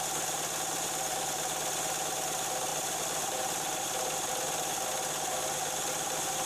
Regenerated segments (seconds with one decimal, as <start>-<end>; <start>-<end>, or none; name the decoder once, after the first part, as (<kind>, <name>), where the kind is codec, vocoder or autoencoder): none